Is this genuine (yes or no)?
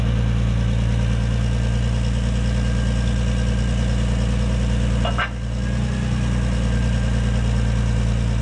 yes